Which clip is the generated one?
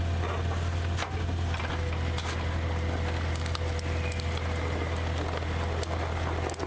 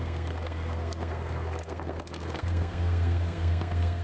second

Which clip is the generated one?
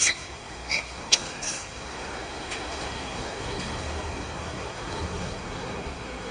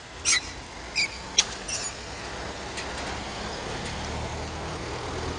first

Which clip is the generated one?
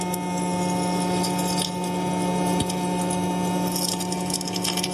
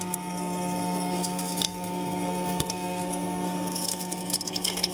second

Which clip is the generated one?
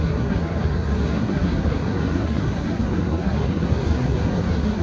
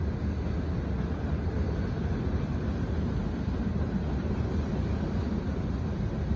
first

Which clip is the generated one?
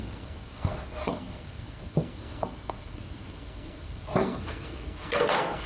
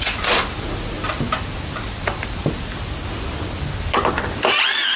first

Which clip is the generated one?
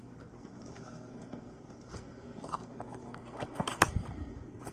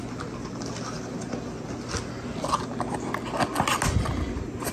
first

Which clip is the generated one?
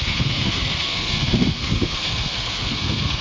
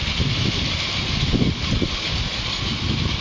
first